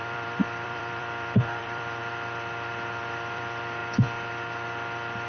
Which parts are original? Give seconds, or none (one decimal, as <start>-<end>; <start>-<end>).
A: 2.0-2.9; 3.8-5.3